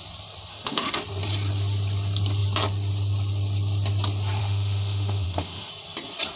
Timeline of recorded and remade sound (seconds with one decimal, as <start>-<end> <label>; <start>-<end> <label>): 0.0-0.5 recorded; 0.5-1.0 remade; 1.0-4.4 recorded; 4.4-5.7 remade; 5.7-6.4 recorded